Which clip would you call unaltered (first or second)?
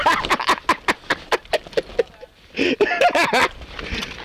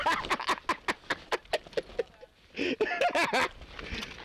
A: second